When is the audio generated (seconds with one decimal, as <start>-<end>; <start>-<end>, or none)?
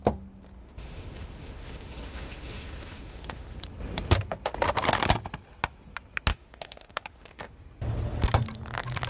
0.6-3.6; 6.3-7.5